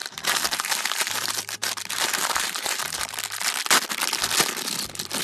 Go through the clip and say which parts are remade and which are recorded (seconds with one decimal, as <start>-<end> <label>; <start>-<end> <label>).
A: 0.0-3.1 remade; 3.1-5.2 recorded